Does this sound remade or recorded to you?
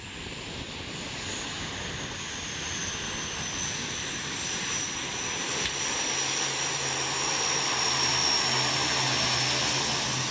recorded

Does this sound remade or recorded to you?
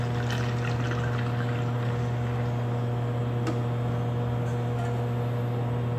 recorded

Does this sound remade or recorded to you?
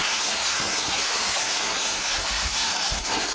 remade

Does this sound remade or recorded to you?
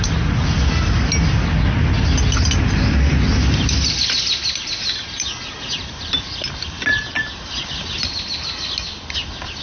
recorded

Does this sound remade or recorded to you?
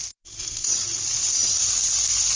remade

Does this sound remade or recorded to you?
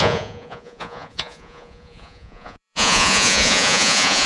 remade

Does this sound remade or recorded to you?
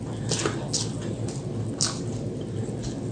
recorded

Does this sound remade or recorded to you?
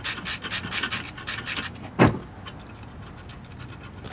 recorded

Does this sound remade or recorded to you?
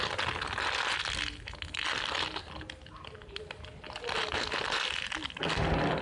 recorded